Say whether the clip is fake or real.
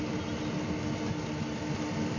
real